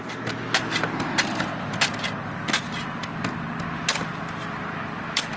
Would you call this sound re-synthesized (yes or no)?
no